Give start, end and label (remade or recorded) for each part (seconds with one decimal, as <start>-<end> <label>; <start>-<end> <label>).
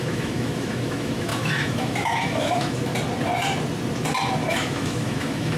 0.0-2.9 remade; 2.9-4.5 recorded; 4.5-5.6 remade